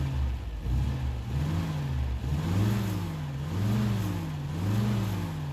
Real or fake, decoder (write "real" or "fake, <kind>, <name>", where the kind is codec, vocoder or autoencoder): real